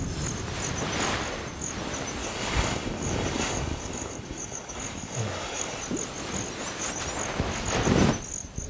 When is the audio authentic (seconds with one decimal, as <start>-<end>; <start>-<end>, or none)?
0.0-2.2; 5.8-8.7